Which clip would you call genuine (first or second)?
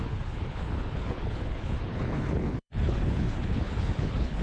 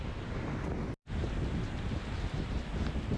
second